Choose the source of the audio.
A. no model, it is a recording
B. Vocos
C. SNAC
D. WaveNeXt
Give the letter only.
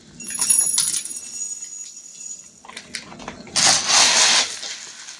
A